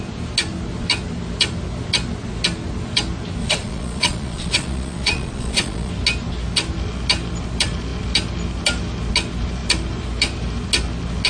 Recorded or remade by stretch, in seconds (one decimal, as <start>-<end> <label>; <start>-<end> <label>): 0.0-3.4 recorded; 3.4-5.9 remade; 5.9-11.3 recorded